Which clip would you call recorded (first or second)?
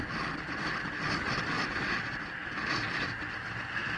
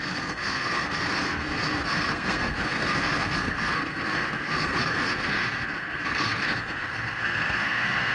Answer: first